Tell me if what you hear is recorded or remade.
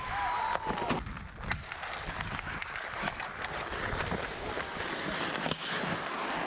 recorded